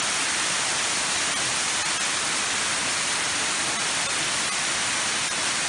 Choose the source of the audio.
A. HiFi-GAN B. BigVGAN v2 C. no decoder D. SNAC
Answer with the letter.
C